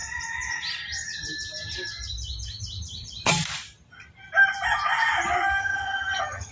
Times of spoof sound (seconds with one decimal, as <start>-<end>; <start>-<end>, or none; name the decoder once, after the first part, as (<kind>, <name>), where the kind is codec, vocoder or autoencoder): 5.6-6.5 (vocoder, HiFi-GAN)